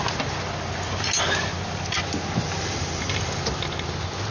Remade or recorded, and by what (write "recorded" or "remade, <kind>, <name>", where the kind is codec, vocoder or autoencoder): recorded